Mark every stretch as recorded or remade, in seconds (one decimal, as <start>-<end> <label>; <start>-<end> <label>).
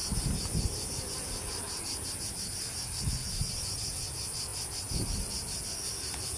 0.0-6.4 recorded